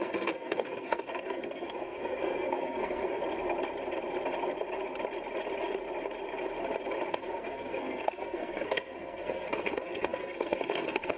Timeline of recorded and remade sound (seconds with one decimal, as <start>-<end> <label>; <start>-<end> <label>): 0.0-3.2 remade; 3.2-7.1 recorded; 7.1-11.2 remade